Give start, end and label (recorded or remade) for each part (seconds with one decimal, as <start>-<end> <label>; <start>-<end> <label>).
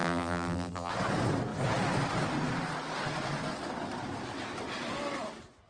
0.0-0.9 remade; 0.9-5.7 recorded